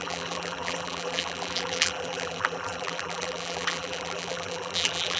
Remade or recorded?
remade